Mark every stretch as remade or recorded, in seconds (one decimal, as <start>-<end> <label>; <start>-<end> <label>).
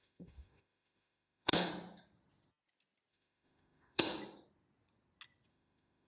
0.0-1.7 remade; 1.7-3.1 recorded; 3.1-4.1 remade; 4.1-5.5 recorded; 5.5-6.1 remade